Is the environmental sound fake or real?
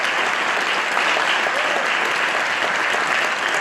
real